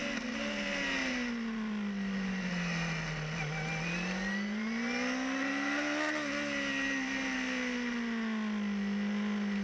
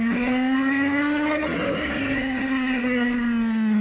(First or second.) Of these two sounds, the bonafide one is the first